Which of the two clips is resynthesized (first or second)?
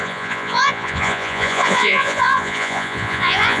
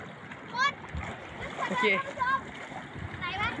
first